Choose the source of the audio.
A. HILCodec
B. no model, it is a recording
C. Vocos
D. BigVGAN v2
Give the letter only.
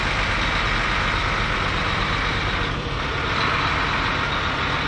B